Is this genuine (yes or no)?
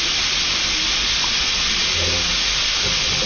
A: yes